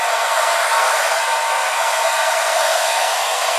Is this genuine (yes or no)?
no